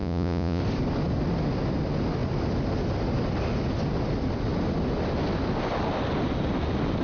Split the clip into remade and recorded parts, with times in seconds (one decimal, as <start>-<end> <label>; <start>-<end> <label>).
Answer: 0.0-0.6 remade; 0.6-7.0 recorded